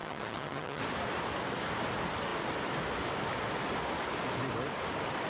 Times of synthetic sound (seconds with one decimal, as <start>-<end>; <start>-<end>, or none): 0.0-0.8